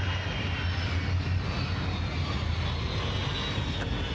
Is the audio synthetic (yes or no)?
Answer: no